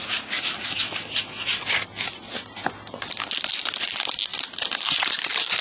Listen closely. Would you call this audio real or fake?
real